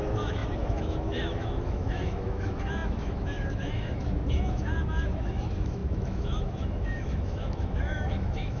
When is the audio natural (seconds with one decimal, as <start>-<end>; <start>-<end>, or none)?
none